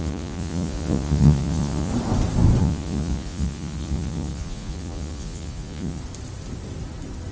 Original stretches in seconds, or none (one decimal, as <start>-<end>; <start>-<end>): 1.9-2.6; 6.0-7.3